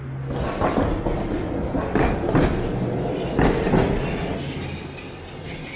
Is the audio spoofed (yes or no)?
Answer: no